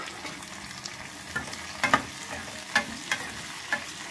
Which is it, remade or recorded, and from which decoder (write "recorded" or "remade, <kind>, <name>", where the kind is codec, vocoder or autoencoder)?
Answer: recorded